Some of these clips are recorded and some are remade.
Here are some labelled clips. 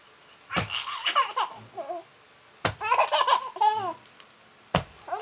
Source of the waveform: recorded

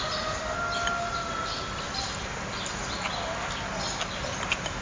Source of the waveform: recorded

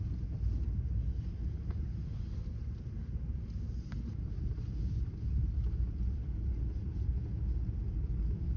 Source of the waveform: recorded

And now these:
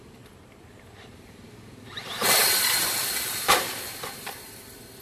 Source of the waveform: remade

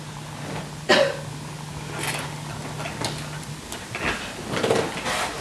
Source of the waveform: recorded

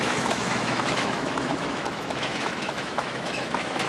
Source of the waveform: remade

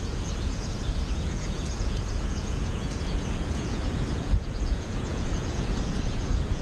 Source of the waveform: remade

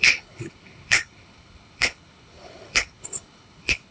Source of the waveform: remade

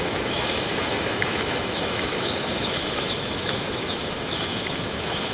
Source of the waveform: remade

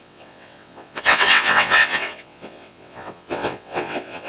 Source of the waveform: remade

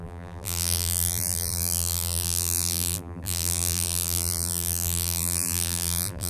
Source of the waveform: remade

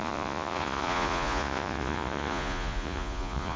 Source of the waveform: remade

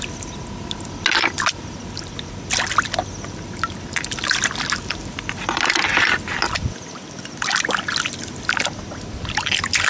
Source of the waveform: recorded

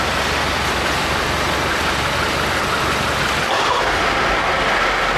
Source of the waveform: recorded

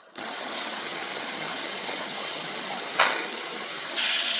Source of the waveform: remade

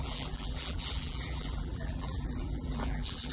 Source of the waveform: remade